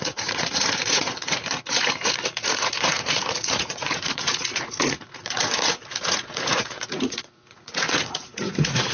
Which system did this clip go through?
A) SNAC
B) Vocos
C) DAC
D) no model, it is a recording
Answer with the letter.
B